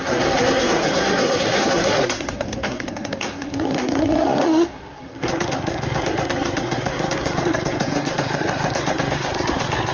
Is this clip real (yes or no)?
no